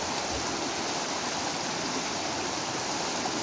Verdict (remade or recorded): recorded